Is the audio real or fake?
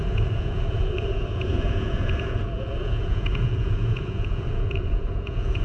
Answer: fake